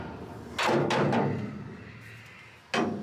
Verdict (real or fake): real